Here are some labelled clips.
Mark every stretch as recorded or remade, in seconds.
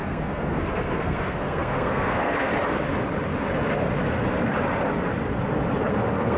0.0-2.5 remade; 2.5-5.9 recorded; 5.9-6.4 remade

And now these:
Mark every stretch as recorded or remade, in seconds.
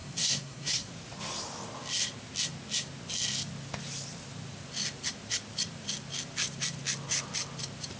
0.0-0.9 remade; 0.9-8.0 recorded